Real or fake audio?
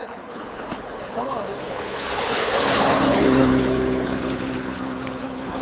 fake